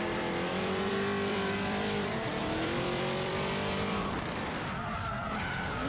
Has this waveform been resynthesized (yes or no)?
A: yes